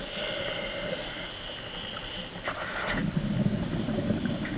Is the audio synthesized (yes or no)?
no